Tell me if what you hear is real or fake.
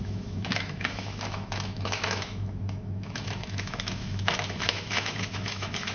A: fake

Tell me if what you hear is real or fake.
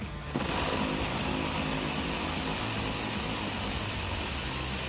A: real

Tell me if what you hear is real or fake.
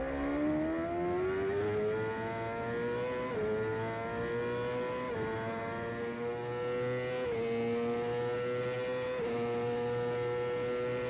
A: real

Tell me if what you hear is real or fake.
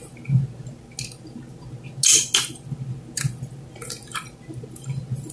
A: real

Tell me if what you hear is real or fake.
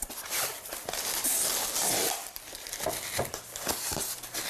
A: real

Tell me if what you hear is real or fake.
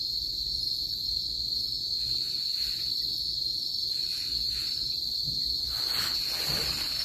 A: real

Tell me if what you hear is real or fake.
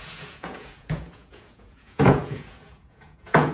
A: fake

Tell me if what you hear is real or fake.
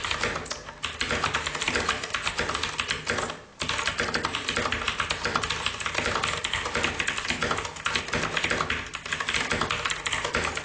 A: real